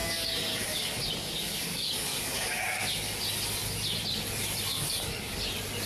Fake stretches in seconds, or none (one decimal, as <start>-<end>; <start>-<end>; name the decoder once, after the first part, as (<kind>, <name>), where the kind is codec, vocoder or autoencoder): 0.0-2.8 (codec, DAC); 4.7-5.3